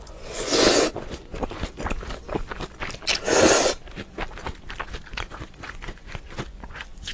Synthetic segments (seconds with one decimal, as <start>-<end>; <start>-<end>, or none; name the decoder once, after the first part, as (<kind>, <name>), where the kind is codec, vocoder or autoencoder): 0.0-1.3 (vocoder, Vocos); 5.1-7.1